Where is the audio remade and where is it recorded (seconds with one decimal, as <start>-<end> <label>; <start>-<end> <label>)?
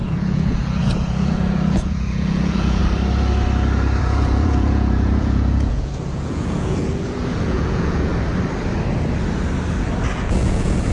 0.0-2.8 remade; 2.8-4.0 recorded; 4.0-8.1 remade; 8.1-10.1 recorded; 10.1-10.9 remade